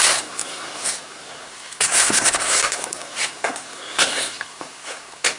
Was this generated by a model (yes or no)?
yes